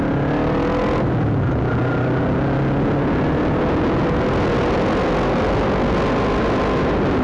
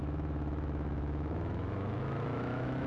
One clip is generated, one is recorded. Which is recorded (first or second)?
first